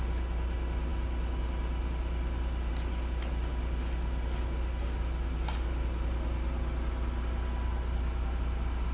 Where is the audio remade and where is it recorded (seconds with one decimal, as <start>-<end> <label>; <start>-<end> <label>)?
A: 0.0-8.9 recorded